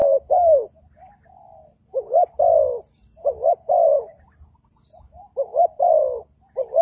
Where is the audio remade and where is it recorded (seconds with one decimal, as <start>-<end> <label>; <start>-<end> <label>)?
0.0-4.0 recorded; 4.0-6.8 remade